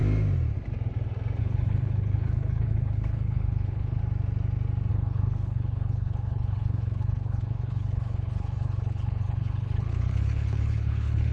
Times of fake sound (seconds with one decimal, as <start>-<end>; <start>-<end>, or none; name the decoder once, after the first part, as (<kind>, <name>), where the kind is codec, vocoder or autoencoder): 1.4-4.0 (codec, HILCodec); 4.9-11.3